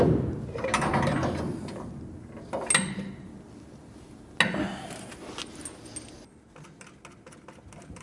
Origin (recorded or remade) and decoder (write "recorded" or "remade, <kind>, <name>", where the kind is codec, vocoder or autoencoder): recorded